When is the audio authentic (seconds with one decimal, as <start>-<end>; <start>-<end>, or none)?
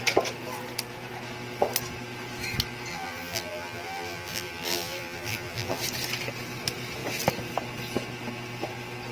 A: 0.0-2.9; 5.8-9.1